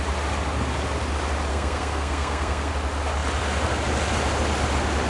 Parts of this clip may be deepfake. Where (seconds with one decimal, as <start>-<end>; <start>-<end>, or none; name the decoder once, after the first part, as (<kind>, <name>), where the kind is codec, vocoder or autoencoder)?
1.5-2.7 (codec, SNAC)

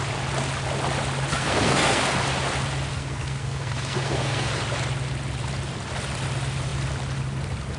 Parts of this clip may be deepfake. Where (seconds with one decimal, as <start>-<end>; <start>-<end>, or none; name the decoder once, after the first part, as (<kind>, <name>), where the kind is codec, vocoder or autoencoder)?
1.3-2.0 (codec, SNAC); 2.9-4.6

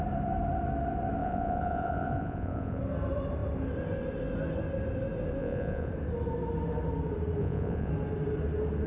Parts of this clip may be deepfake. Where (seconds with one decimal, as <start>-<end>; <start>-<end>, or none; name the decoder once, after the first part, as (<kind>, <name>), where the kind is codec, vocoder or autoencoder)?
1.2-2.8 (vocoder, Vocos); 5.4-5.9; 7.4-7.9

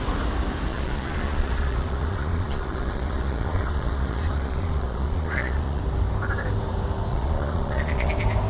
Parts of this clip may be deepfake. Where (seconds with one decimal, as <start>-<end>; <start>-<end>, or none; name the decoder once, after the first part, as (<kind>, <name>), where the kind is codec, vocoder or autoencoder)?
0.7-5.8 (vocoder, Vocos); 7.1-8.1